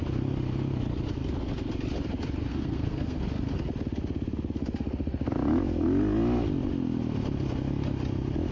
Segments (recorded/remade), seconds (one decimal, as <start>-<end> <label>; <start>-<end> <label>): 0.0-2.5 recorded; 2.5-3.2 remade; 3.2-8.5 recorded